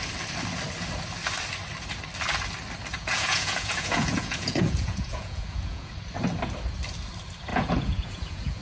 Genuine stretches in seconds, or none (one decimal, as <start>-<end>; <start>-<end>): 0.0-2.9; 5.9-7.5